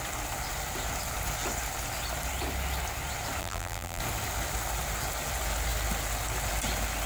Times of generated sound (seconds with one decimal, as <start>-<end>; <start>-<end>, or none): 3.4-4.0